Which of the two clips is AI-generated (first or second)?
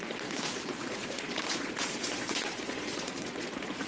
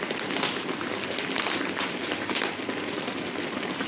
first